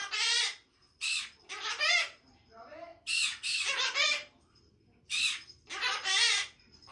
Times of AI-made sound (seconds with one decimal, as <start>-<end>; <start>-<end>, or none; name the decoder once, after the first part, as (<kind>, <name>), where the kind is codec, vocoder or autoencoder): 0.0-1.7 (vocoder, BigVGAN v2); 2.9-5.7